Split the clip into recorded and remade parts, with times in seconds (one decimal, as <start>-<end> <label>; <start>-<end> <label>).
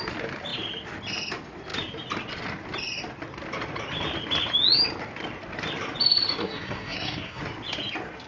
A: 0.0-6.4 recorded; 6.4-7.4 remade; 7.4-8.3 recorded